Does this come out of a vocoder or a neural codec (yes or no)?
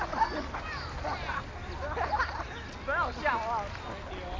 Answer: no